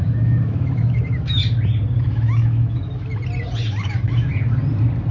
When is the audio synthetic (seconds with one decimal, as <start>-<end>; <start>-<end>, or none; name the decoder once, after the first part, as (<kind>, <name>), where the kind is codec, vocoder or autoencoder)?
0.0-1.4 (autoencoder, DAC-VAE); 2.0-3.1; 3.8-4.3